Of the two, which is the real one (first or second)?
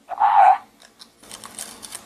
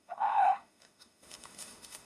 first